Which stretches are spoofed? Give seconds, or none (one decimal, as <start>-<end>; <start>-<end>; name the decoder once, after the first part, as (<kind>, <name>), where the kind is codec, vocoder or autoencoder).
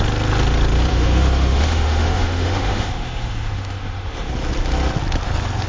0.9-4.3 (autoencoder, DAC-VAE)